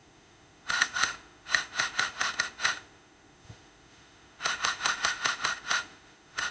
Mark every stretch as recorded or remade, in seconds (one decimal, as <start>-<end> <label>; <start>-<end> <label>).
0.0-6.5 remade